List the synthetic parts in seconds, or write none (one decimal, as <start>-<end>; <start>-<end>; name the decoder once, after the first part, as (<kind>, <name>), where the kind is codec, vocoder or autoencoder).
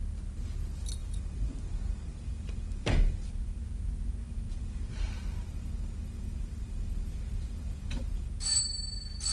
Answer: 1.0-3.6 (vocoder, BigVGAN v2); 4.2-8.6